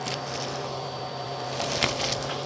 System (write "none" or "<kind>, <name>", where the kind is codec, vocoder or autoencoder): vocoder, BigVGAN v2